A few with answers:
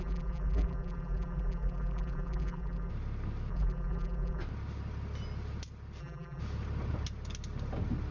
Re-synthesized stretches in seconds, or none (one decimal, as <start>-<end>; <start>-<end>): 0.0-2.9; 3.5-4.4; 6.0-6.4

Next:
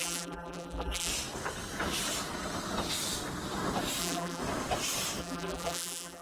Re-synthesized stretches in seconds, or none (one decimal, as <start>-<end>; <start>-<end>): 0.0-1.1; 4.0-4.4; 5.2-6.2

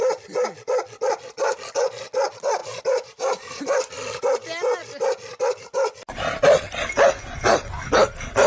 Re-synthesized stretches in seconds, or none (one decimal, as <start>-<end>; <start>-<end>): 2.6-3.9